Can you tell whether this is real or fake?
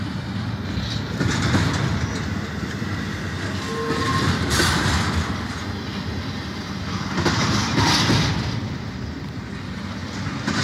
real